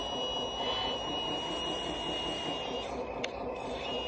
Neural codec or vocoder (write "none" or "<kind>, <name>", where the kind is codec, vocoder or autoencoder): none